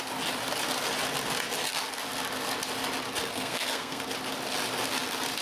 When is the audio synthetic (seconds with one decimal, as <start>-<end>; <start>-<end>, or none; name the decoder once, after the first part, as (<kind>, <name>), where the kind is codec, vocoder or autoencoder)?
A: 3.3-4.0 (codec, SNAC)